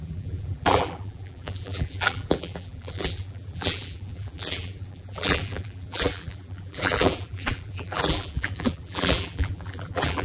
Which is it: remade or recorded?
remade